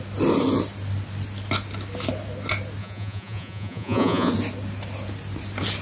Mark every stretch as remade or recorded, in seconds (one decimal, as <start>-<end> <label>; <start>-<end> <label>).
0.0-2.8 recorded; 2.8-4.3 remade; 4.3-5.8 recorded